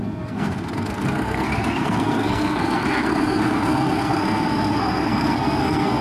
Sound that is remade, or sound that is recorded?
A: remade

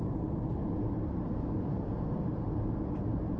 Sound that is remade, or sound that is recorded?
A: remade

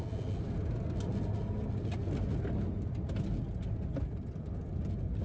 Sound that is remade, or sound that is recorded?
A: recorded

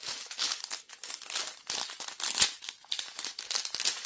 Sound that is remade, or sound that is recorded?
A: recorded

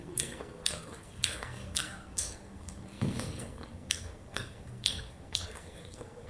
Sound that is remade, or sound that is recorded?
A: remade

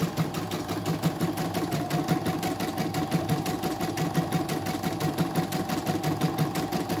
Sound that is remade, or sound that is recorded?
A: recorded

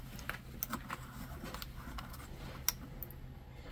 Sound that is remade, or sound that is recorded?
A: recorded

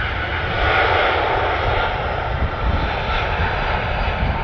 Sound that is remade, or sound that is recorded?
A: remade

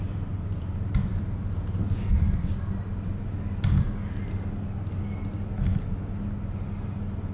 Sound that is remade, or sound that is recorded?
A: recorded